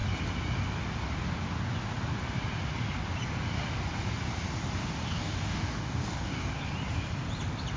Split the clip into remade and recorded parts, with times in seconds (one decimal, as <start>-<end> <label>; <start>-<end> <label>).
0.0-5.0 recorded; 5.0-6.5 remade; 6.5-7.8 recorded